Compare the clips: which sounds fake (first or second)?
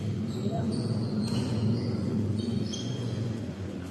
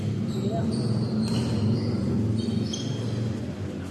first